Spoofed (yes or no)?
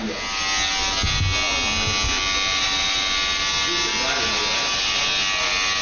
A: no